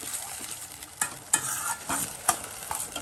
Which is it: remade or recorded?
remade